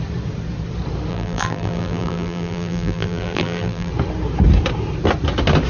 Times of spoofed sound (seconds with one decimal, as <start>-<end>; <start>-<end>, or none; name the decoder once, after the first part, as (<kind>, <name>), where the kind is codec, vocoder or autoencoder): 1.1-3.9 (vocoder, BigVGAN v2)